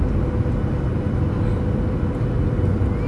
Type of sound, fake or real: real